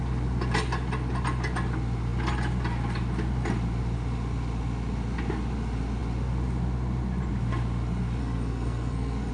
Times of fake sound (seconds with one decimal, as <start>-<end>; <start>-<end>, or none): 8.2-9.3